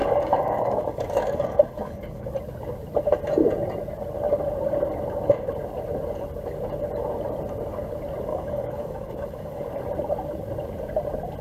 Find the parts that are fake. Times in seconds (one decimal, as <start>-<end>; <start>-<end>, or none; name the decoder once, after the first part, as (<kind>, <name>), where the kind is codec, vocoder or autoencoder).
0.0-2.3 (codec, DAC); 8.3-9.6